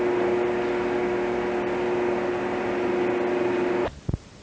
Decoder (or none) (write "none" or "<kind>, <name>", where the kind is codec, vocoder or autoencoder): none